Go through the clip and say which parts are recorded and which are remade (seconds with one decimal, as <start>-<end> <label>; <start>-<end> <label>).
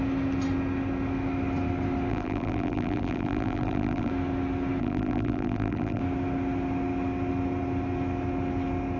0.0-2.1 recorded; 2.1-4.1 remade; 4.1-4.8 recorded; 4.8-6.0 remade; 6.0-9.0 recorded